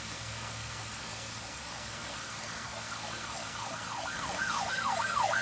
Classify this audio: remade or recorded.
remade